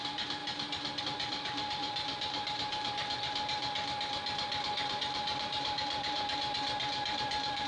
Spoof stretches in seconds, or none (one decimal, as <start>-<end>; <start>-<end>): 0.0-0.4; 1.0-3.6; 5.0-7.7